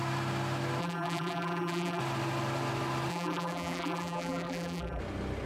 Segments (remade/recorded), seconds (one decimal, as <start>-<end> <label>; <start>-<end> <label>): 0.0-0.8 recorded; 0.8-2.0 remade; 2.0-3.1 recorded; 3.1-5.0 remade; 5.0-5.5 recorded